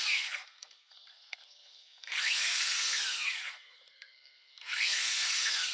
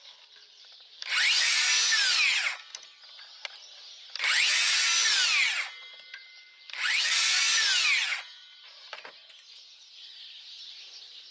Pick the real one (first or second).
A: second